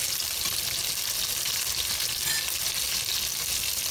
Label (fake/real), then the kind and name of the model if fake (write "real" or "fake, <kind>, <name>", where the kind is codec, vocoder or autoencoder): real